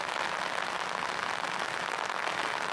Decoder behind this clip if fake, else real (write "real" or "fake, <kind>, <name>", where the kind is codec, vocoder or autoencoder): real